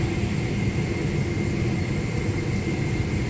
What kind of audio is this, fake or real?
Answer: real